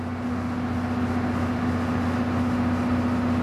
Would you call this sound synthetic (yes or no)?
no